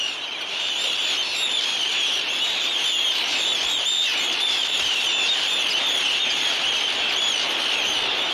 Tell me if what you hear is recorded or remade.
remade